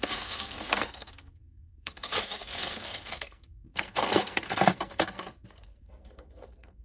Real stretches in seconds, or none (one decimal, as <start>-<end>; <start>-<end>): none